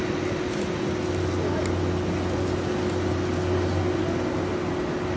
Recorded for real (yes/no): yes